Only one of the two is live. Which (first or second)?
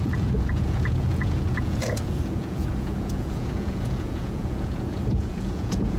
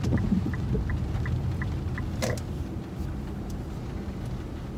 second